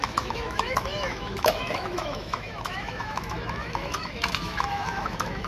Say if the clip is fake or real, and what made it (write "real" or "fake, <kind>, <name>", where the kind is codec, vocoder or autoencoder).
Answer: fake, autoencoder, DAC-VAE